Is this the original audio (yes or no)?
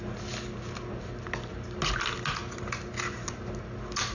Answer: yes